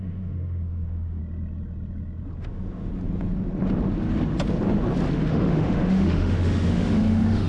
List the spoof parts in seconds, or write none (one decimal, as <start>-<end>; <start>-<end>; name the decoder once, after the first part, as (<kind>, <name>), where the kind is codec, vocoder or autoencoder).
0.0-1.2 (autoencoder, DAC-VAE); 2.4-2.9; 5.3-7.5